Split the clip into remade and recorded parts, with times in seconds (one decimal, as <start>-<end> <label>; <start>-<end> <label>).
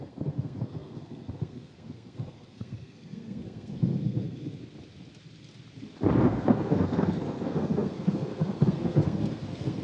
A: 0.0-4.6 remade; 4.6-6.2 recorded; 6.2-9.8 remade